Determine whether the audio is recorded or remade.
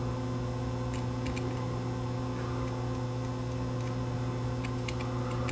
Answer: recorded